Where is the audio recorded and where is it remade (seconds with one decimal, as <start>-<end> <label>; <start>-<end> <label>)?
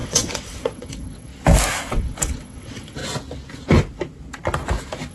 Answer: 0.0-1.3 remade; 1.3-1.9 recorded; 1.9-3.0 remade; 3.0-5.1 recorded